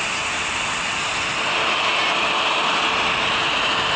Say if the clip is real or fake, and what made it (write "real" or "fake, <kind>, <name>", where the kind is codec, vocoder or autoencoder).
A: real